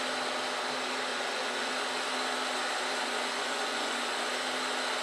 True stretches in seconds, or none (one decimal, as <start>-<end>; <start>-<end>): 0.0-1.1; 1.7-3.0; 4.3-5.0